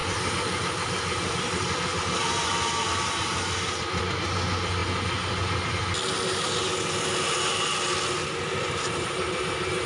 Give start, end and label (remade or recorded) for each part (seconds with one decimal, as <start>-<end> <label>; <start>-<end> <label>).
0.0-9.9 recorded